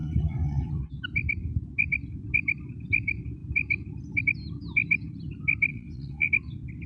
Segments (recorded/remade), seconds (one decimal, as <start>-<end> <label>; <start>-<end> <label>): 0.0-0.9 remade; 0.9-5.7 recorded; 5.7-6.3 remade; 6.3-6.9 recorded